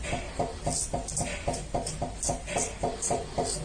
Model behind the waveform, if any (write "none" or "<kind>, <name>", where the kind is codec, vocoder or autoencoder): none